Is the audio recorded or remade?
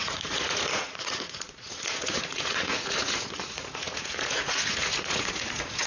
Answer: remade